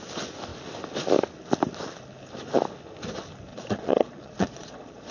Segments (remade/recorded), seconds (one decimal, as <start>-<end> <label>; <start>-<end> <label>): 0.0-3.5 recorded; 3.5-5.1 remade